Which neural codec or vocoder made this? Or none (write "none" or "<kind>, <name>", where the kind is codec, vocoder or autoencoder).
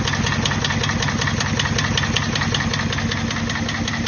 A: none